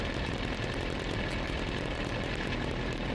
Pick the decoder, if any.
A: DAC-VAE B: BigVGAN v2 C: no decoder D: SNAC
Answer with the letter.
C